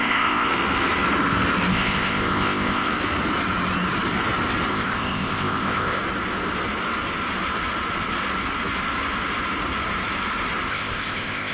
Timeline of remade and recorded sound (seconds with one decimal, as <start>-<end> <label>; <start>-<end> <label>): 0.0-0.5 remade; 0.5-1.7 recorded; 1.7-2.9 remade; 2.9-4.7 recorded; 4.7-6.0 remade; 6.0-10.7 recorded; 10.7-11.5 remade